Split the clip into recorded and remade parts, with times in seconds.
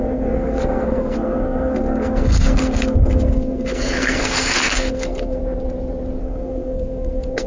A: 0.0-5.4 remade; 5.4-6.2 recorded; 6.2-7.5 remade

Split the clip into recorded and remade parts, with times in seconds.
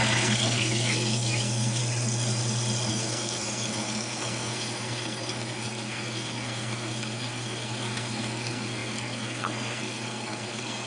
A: 0.0-1.8 remade; 1.8-2.9 recorded; 2.9-10.9 remade